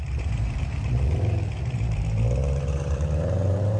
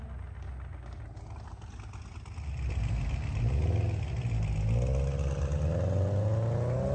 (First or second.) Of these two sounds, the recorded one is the second